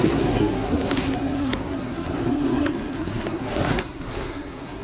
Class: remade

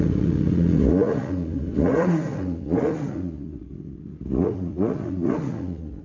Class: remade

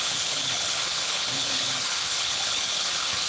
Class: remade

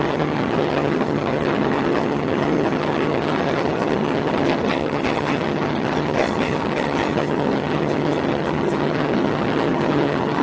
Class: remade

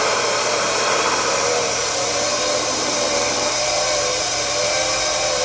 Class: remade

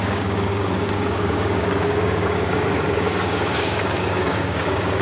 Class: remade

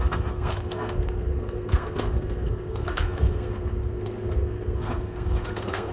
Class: remade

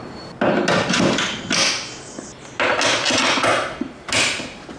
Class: recorded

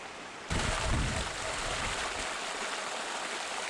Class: recorded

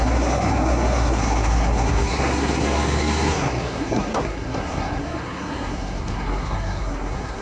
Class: remade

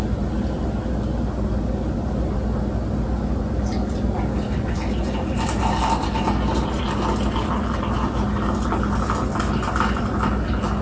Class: recorded